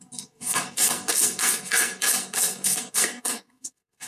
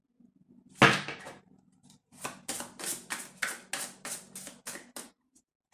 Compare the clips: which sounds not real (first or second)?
first